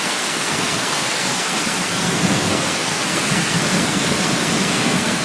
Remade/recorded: remade